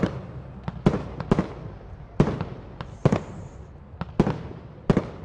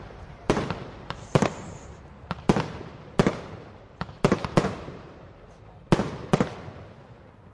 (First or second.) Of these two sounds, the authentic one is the first